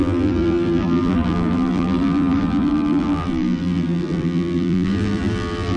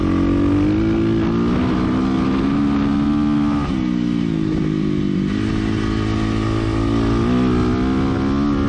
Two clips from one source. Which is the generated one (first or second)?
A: first